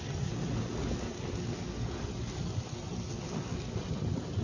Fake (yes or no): no